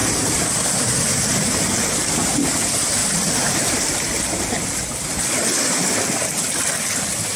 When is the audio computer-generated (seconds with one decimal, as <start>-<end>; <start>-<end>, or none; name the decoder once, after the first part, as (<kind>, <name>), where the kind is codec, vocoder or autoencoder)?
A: none